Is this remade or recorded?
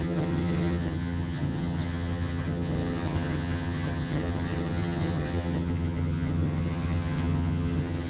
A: remade